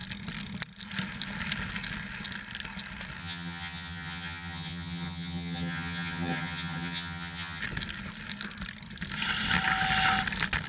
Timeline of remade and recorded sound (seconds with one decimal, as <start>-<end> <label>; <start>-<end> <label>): 0.0-3.2 recorded; 3.2-7.6 remade; 7.6-10.7 recorded